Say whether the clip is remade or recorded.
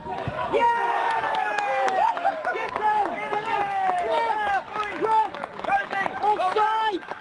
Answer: remade